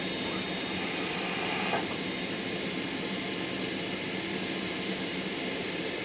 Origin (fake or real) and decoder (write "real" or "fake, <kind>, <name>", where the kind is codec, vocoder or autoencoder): real